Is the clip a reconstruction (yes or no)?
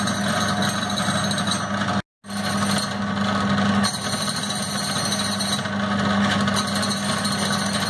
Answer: no